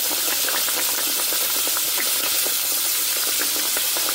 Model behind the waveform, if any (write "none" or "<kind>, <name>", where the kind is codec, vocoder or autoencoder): none